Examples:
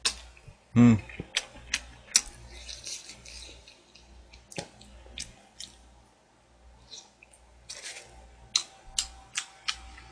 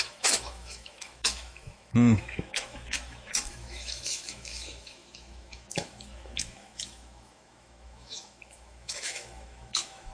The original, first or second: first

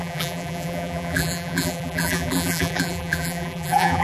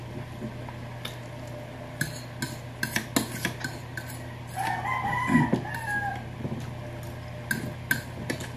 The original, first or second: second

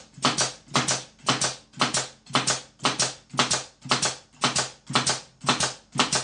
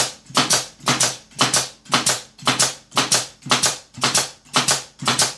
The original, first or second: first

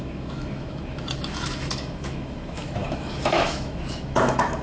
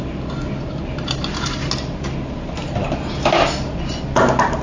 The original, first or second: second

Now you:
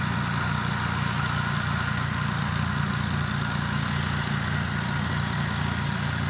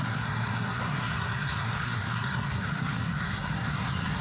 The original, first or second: first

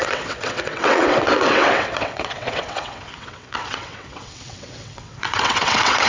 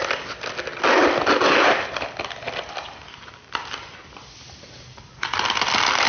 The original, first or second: second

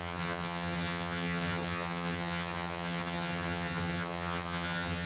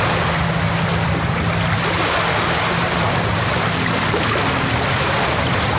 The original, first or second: second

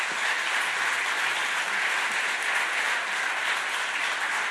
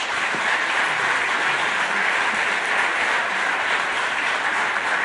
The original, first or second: first